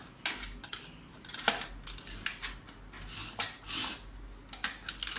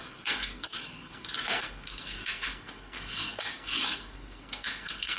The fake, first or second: second